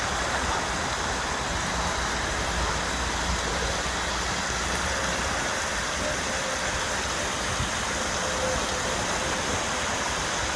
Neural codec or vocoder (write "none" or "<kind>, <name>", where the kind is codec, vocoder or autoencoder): none